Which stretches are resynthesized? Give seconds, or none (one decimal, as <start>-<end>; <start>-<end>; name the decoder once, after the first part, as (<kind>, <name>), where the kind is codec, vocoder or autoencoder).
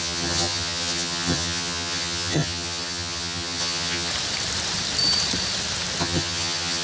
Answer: 0.0-4.1 (vocoder, HiFi-GAN); 6.0-6.8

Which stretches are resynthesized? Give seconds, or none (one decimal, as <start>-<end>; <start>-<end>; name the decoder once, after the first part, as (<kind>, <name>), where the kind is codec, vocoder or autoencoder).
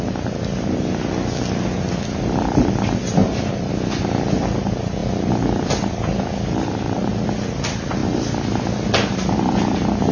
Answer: 3.2-3.7 (vocoder, BigVGAN v2)